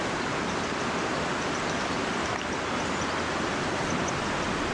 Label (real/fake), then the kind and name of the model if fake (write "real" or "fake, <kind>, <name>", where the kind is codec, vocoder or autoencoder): real